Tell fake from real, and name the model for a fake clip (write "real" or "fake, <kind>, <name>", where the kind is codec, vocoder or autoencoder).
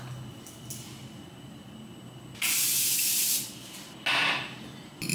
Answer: real